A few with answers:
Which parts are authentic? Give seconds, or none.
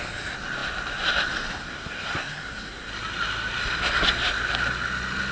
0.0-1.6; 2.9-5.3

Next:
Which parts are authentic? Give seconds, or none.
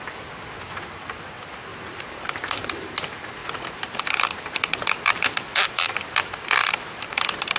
0.0-1.7; 2.9-3.4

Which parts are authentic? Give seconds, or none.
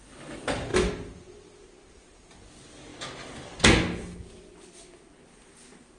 0.0-6.0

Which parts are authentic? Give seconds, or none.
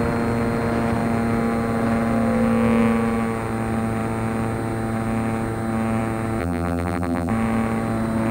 0.0-6.4; 7.3-8.3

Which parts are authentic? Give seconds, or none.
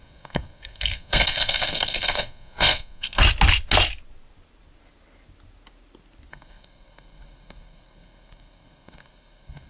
3.2-6.3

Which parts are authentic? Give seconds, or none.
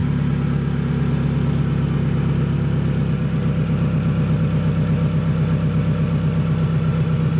0.0-7.4